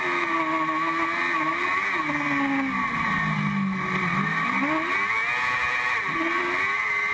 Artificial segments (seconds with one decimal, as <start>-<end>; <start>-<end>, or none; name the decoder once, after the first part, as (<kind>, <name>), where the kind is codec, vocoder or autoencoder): none